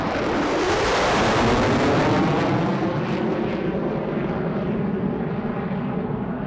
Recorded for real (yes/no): yes